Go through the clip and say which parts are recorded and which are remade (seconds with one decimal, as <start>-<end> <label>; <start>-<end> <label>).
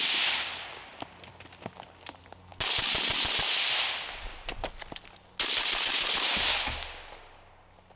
0.0-8.0 recorded